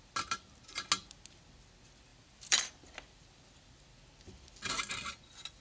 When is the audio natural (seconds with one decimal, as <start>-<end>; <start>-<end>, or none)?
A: 0.0-2.1; 3.9-5.6